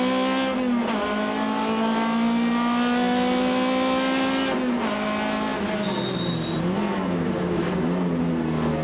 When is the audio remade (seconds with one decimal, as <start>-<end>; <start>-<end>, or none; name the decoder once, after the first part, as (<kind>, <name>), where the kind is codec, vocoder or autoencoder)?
none